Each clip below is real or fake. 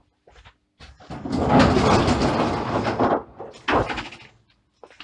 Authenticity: real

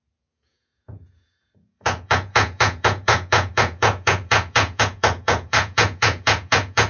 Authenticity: fake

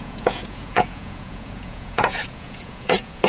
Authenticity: fake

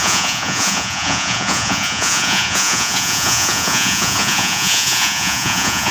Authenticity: fake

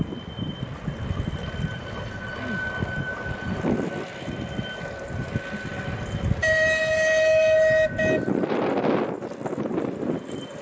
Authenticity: real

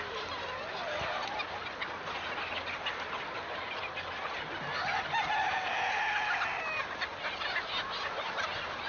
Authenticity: real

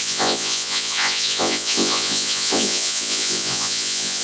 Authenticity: fake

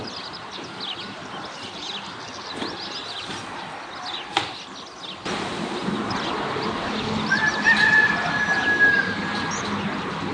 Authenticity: real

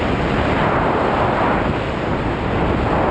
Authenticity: real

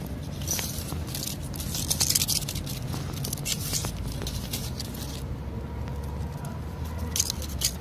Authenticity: real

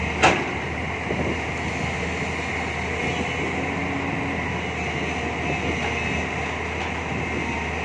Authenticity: real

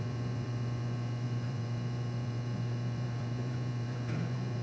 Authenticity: fake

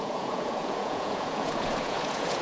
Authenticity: fake